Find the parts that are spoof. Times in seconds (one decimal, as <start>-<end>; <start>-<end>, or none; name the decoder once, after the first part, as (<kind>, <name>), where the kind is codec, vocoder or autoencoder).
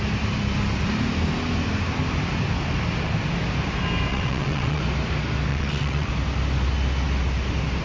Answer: 4.1-4.8 (vocoder, WaveNeXt); 5.5-6.1